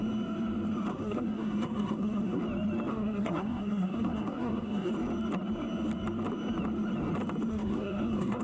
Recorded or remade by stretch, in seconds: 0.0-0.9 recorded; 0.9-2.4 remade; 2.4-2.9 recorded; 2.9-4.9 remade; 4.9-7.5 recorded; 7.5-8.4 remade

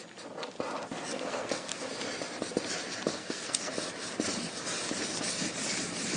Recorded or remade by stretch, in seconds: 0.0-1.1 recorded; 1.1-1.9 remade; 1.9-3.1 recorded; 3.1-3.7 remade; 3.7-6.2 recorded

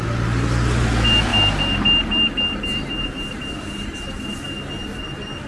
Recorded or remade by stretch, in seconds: 0.0-5.5 recorded